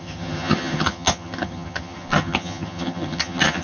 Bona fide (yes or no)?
no